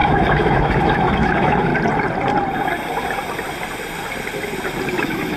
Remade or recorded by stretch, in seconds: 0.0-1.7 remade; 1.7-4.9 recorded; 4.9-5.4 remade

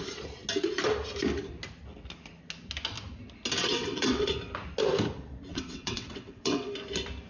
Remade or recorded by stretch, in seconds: 0.0-3.6 recorded; 3.6-4.3 remade; 4.3-5.5 recorded; 5.5-6.7 remade; 6.7-7.3 recorded

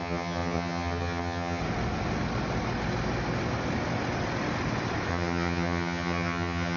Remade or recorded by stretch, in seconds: 0.0-1.6 remade; 1.6-5.1 recorded; 5.1-6.8 remade

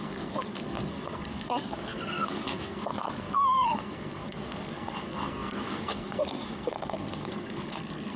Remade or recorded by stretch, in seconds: 0.0-8.2 remade

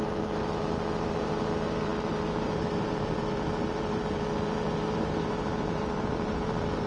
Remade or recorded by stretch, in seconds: 0.0-6.9 remade

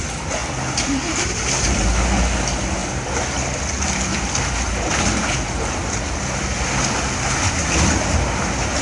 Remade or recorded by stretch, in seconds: 0.0-8.8 recorded

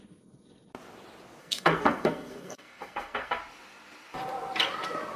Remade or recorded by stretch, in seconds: 0.0-1.4 recorded; 1.4-3.4 remade; 3.4-5.2 recorded